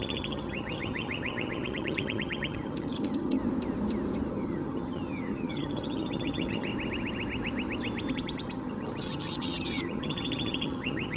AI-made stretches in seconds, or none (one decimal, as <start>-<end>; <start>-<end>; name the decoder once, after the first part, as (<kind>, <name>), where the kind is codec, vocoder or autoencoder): 0.0-3.4 (vocoder, HiFi-GAN); 4.3-6.7; 8.1-11.2